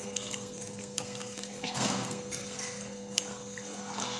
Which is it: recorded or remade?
remade